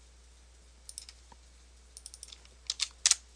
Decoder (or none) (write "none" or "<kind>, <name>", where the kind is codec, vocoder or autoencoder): none